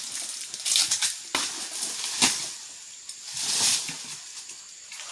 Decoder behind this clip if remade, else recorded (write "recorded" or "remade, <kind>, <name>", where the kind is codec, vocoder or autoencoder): recorded